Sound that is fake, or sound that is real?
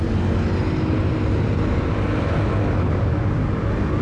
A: real